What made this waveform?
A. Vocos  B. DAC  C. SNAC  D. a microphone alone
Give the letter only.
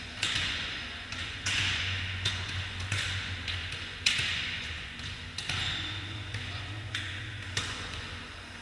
A